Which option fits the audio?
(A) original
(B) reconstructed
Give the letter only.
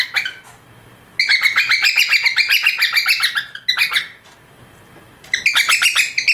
A